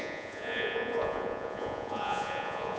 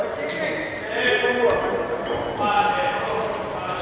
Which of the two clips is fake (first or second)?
first